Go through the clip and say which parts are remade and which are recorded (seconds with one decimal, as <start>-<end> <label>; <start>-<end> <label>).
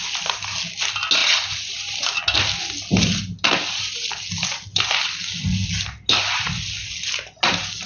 0.0-1.2 recorded; 1.2-2.2 remade; 2.2-7.9 recorded